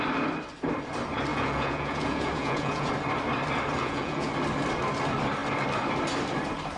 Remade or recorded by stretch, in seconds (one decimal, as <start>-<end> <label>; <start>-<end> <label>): 0.0-1.3 recorded; 1.3-2.9 remade; 2.9-3.8 recorded; 3.8-4.3 remade; 4.3-6.8 recorded

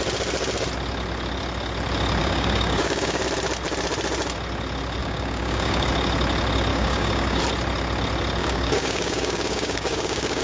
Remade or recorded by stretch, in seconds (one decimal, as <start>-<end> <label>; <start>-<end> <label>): 0.0-2.2 recorded; 2.2-3.2 remade; 3.2-5.0 recorded; 5.0-5.9 remade; 5.9-6.7 recorded; 6.7-7.4 remade; 7.4-8.4 recorded; 8.4-10.4 remade

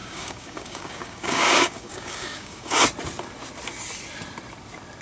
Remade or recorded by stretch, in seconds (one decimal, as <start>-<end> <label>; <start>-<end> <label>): 0.0-2.8 remade; 2.8-5.0 recorded

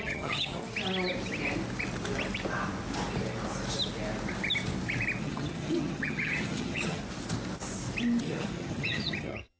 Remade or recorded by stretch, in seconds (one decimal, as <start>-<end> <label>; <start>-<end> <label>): 0.0-0.6 remade; 0.6-5.2 recorded; 5.2-7.0 remade; 7.0-8.2 recorded; 8.2-9.6 remade

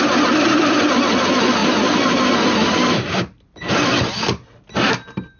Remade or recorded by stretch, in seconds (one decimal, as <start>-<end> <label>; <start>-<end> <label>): 0.0-5.4 recorded

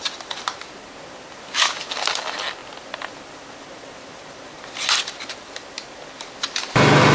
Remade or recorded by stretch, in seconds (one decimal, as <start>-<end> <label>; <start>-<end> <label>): 0.0-7.1 recorded

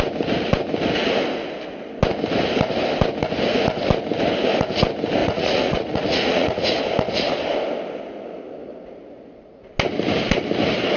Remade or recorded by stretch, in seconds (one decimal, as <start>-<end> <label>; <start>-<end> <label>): 0.0-5.2 recorded; 5.2-6.8 remade; 6.8-11.0 recorded